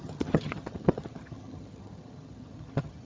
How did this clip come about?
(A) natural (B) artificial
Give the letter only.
B